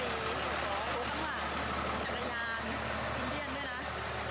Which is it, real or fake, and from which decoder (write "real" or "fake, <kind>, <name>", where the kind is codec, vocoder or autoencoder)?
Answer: real